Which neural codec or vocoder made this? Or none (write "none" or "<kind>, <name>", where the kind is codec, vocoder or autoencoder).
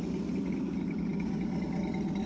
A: none